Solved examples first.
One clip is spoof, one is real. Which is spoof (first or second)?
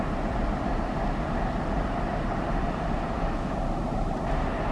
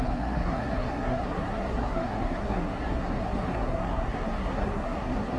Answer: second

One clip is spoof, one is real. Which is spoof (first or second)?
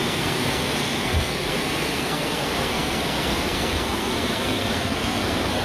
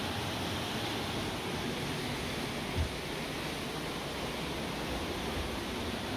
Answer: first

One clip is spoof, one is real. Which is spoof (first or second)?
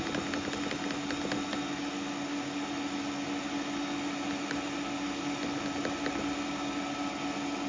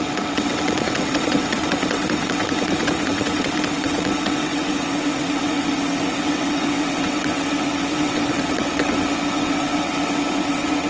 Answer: second